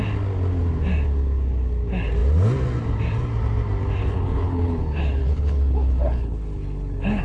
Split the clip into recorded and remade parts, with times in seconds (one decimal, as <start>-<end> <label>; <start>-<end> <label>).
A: 0.0-4.0 recorded; 4.0-4.8 remade; 4.8-5.2 recorded; 5.2-7.2 remade